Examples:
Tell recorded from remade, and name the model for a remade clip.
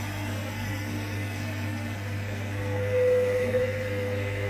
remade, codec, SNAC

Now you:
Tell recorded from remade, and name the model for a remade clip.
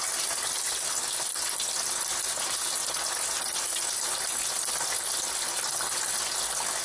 recorded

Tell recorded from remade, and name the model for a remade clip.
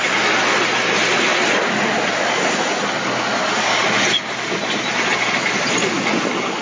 recorded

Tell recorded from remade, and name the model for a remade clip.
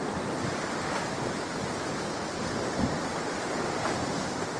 recorded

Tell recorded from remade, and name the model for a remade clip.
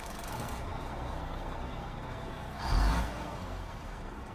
remade, codec, SNAC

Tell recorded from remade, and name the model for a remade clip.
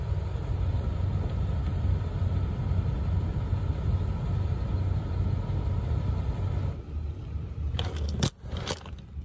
recorded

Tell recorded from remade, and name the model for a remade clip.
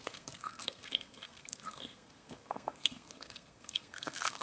remade, codec, SNAC